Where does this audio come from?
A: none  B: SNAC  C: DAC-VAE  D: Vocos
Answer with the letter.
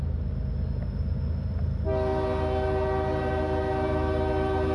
A